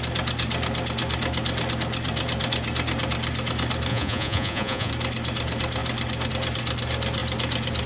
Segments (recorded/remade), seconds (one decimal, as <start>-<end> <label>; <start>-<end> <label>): 0.0-3.9 recorded; 3.9-4.9 remade; 4.9-7.9 recorded